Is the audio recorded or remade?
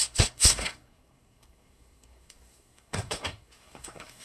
remade